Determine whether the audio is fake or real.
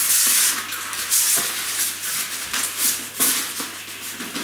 real